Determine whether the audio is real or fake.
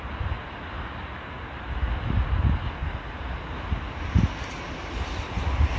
real